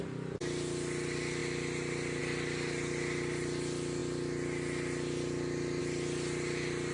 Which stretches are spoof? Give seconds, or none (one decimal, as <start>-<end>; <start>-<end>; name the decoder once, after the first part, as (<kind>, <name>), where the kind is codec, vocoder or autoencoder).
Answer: none